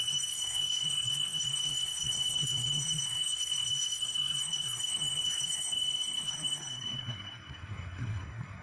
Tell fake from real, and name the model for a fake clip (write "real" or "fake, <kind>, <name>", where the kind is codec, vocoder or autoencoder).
fake, codec, SNAC